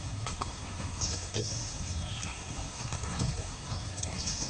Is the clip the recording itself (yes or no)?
no